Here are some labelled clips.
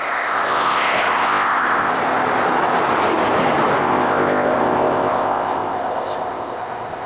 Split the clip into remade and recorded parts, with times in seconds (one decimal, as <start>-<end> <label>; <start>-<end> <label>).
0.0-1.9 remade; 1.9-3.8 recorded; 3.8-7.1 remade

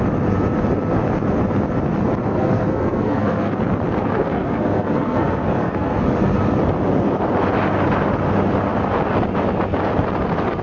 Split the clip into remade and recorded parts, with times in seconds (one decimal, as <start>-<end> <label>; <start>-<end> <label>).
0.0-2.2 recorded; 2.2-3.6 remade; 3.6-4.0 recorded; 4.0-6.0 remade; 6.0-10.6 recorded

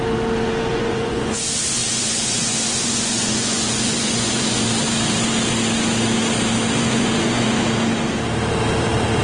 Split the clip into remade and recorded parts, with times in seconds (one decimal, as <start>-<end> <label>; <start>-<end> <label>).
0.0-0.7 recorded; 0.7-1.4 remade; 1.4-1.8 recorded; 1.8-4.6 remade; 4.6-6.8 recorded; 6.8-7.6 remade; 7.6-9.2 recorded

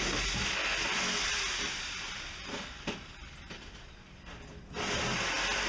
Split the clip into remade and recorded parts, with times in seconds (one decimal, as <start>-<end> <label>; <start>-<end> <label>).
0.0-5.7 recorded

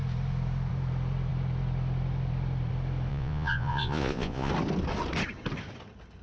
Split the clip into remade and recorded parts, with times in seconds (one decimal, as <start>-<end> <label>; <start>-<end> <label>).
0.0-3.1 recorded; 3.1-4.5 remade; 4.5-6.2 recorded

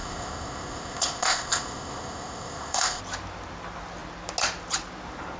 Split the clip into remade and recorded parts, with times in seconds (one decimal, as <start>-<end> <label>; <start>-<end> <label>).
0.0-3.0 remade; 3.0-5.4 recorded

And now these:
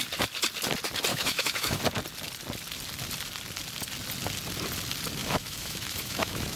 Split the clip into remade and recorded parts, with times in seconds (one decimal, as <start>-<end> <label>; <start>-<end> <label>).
0.0-1.1 recorded; 1.1-1.8 remade; 1.8-5.2 recorded; 5.2-6.6 remade

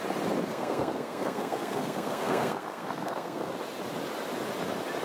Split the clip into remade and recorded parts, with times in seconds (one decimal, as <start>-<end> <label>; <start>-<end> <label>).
0.0-0.5 recorded; 0.5-3.5 remade; 3.5-5.0 recorded